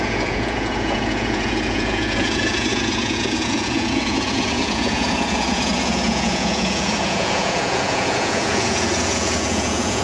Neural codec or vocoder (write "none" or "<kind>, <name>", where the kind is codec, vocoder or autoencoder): vocoder, Vocos